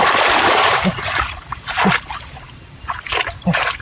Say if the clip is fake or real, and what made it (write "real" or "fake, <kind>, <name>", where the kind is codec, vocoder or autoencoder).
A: fake, vocoder, BigVGAN v2